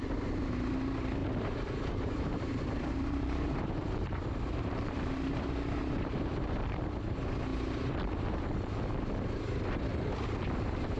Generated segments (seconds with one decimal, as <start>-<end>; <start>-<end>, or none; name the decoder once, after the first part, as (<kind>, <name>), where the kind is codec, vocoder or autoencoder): 1.2-5.4 (vocoder, BigVGAN v2)